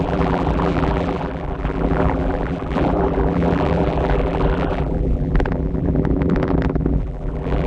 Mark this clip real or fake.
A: fake